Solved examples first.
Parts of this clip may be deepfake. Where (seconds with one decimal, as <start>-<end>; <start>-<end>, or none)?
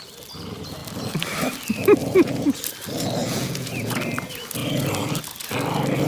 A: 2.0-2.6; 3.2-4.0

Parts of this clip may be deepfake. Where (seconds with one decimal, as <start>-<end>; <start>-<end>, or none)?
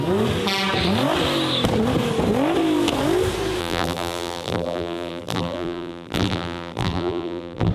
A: 3.6-7.7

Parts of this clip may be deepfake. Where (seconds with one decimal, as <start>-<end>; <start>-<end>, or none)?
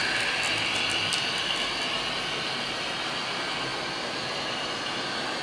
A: none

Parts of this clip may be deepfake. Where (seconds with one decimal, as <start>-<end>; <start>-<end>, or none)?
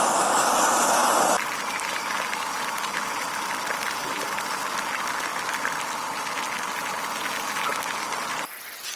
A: 1.0-4.6; 5.3-5.9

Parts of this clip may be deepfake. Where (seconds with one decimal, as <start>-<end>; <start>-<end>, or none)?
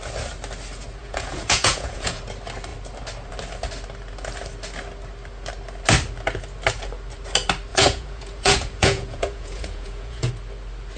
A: 1.0-2.2; 7.7-10.3